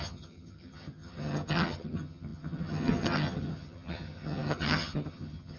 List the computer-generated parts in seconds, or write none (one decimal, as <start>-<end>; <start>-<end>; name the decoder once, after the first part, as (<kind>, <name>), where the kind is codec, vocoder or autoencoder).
0.0-5.6 (vocoder, HiFi-GAN)